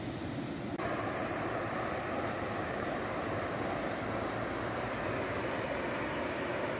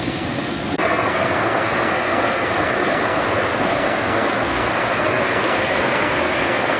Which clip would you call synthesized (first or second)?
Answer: second